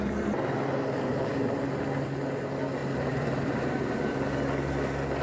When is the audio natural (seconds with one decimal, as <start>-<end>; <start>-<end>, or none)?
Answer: 0.0-1.1; 1.8-2.8; 4.3-5.2